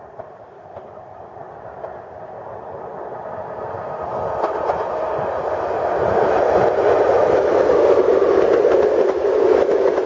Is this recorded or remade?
recorded